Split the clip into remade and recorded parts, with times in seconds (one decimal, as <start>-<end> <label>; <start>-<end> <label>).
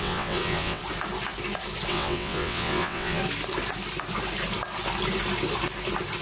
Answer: 0.0-0.8 remade; 0.8-1.9 recorded; 1.9-3.2 remade; 3.2-6.2 recorded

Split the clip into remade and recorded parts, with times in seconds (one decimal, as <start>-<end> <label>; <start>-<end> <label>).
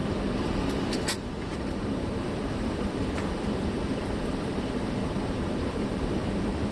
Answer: 0.0-1.8 recorded; 1.8-6.7 remade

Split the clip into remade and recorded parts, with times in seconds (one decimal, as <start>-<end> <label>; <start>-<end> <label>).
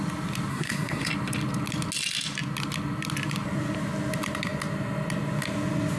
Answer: 0.0-0.5 recorded; 0.5-1.1 remade; 1.1-6.0 recorded